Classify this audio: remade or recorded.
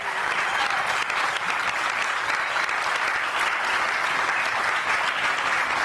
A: recorded